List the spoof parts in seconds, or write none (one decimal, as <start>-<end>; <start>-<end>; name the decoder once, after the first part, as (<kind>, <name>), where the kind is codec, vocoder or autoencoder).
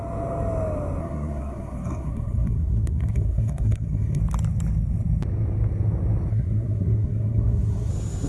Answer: 1.0-4.2 (codec, SNAC); 6.3-7.9